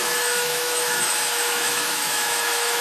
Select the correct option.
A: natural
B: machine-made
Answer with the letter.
B